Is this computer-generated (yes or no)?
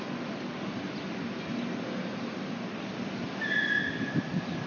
no